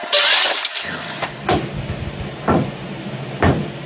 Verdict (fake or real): real